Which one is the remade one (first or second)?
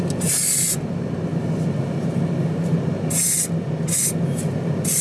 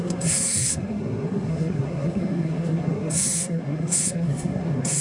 second